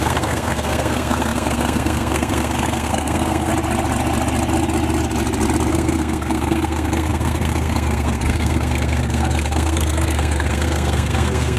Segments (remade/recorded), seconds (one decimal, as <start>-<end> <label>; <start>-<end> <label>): 0.0-3.5 remade; 3.5-5.7 recorded; 5.7-11.6 remade